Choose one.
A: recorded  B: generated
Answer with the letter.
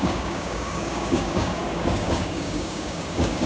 B